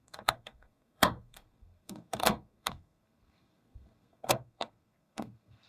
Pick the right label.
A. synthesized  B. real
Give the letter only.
A